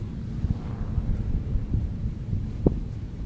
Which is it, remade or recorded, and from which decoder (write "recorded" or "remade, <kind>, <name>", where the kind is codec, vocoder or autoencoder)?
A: remade, vocoder, BigVGAN v2